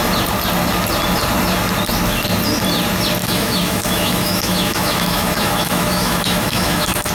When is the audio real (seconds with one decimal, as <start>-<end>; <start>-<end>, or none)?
0.0-3.2